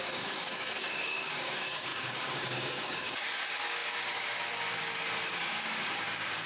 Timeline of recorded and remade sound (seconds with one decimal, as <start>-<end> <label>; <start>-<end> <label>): 0.0-6.5 remade

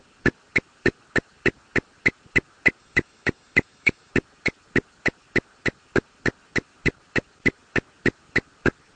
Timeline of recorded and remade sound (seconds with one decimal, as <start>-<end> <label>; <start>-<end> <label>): 0.0-2.8 recorded; 2.8-4.1 remade; 4.1-9.0 recorded

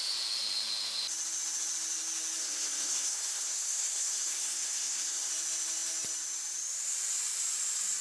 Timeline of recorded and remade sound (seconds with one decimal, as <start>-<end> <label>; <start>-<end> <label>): 0.0-2.4 recorded; 2.4-5.3 remade; 5.3-8.0 recorded

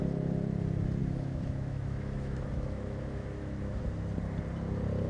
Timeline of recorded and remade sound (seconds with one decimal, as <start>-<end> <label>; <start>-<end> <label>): 0.0-1.0 recorded; 1.0-3.8 remade; 3.8-5.1 recorded